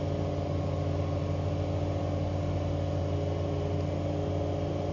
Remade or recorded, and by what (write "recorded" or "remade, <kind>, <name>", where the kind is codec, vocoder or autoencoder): recorded